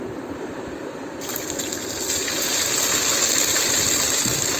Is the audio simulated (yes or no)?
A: no